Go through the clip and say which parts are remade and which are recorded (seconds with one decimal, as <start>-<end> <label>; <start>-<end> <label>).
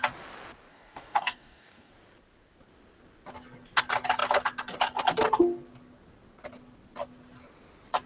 0.0-0.7 recorded; 0.7-1.9 remade; 1.9-8.1 recorded